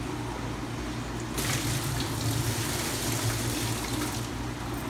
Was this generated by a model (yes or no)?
no